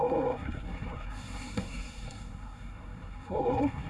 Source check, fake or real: fake